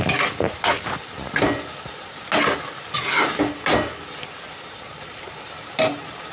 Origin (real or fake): real